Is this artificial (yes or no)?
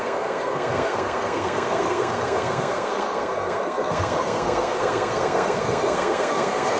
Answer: yes